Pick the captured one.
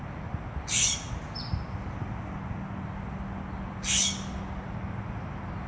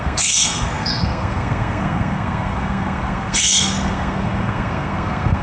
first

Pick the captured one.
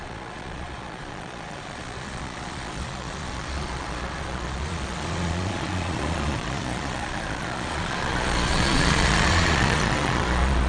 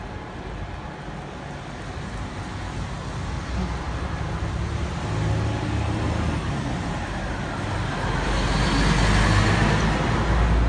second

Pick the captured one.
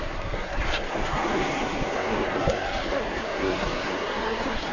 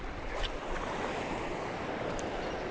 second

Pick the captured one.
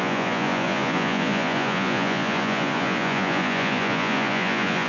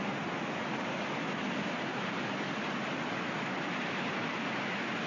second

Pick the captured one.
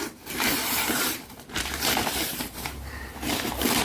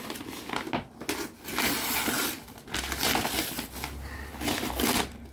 second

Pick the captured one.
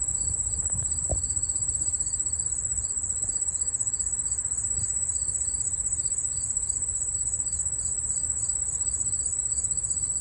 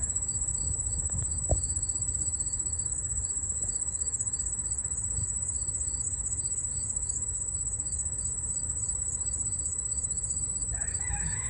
first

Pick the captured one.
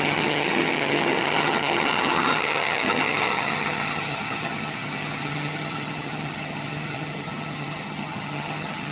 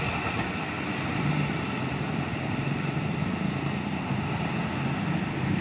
second